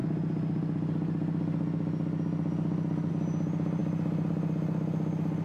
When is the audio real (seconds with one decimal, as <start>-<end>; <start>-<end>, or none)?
0.0-5.4